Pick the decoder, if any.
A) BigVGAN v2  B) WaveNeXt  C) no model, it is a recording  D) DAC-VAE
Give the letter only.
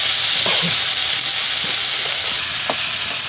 C